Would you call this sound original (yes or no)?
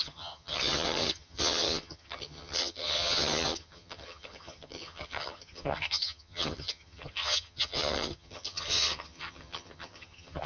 no